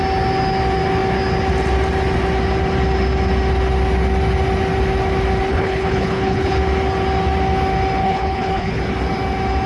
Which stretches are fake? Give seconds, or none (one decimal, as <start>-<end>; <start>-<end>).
5.5-6.6; 8.0-8.8